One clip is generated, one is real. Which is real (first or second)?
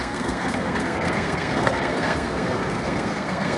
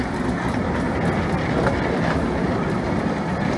second